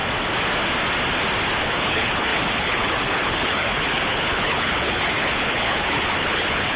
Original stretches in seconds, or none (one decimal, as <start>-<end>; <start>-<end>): 0.0-1.6